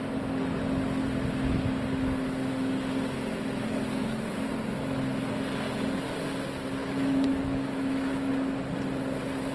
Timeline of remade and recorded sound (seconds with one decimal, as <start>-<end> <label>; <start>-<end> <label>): 0.0-4.0 recorded; 4.0-4.5 remade; 4.5-6.8 recorded; 6.8-8.3 remade; 8.3-9.5 recorded